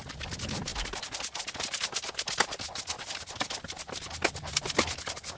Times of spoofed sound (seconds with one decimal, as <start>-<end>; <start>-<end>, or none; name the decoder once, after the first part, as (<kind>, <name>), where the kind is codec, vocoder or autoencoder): none

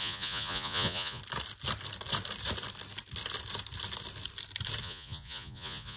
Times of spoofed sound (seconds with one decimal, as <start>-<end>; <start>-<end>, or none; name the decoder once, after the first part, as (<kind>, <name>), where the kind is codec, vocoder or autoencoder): 0.0-1.2 (vocoder, Vocos); 4.8-6.0

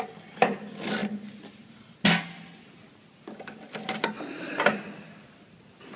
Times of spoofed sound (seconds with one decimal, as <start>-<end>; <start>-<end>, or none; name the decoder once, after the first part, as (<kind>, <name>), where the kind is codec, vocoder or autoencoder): none

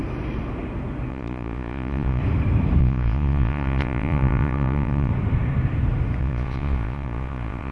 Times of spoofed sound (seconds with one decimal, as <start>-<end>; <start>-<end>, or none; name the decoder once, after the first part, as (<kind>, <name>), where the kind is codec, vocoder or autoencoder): 1.1-2.2 (vocoder, Vocos); 2.8-5.1; 6.2-7.7